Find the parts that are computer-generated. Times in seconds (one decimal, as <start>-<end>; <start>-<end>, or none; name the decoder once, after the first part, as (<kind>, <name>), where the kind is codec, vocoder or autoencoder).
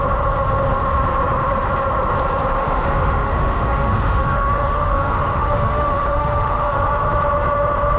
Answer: 2.6-6.9 (autoencoder, DAC-VAE)